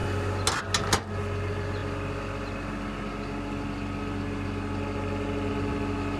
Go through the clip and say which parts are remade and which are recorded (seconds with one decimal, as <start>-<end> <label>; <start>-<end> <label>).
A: 0.0-6.2 recorded